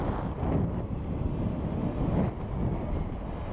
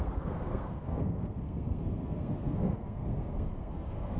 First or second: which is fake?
second